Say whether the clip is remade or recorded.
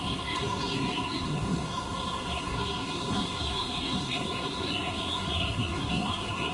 remade